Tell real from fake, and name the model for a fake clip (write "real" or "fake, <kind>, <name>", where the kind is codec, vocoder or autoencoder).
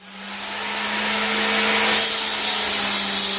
real